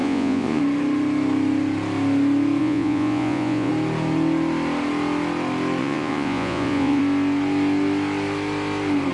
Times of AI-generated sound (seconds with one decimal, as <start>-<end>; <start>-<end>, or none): 0.0-0.6; 2.6-3.7; 5.8-7.0